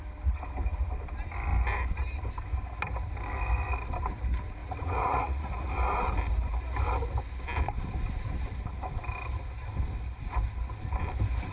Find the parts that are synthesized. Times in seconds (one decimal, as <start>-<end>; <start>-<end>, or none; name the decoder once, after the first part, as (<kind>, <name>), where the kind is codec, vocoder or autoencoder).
4.6-5.7 (vocoder, Vocos)